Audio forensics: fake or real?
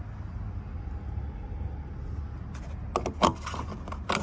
real